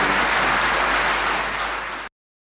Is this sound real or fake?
real